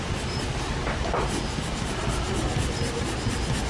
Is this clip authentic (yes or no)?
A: yes